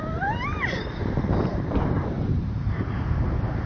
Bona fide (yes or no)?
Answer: no